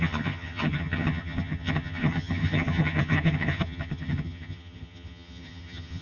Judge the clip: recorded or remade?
remade